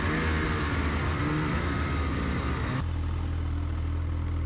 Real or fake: real